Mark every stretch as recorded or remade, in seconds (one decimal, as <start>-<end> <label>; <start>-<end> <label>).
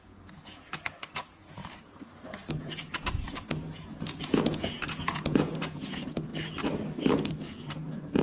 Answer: 0.0-1.6 remade; 1.6-2.5 recorded; 2.5-6.3 remade; 6.3-7.3 recorded; 7.3-8.2 remade